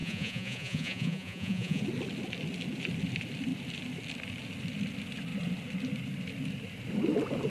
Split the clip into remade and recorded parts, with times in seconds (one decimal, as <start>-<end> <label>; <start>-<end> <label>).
0.0-1.8 remade; 1.8-7.5 recorded